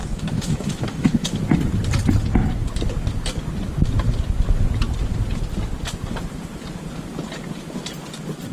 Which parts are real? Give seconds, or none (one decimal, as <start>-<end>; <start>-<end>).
1.4-8.5